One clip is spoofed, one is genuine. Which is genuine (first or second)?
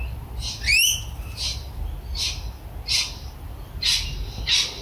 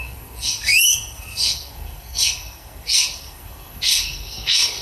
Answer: first